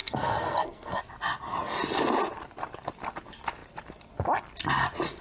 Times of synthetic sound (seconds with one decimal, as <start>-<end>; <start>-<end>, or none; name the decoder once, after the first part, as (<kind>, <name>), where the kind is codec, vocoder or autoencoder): 0.0-1.0 (codec, SNAC)